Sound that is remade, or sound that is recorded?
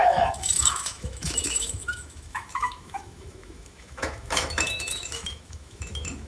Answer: remade